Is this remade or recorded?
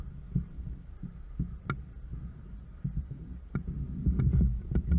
recorded